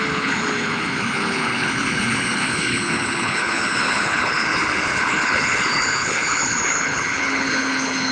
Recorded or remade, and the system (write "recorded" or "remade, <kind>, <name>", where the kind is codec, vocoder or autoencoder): remade, codec, HILCodec